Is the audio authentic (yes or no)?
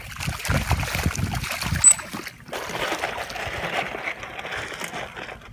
yes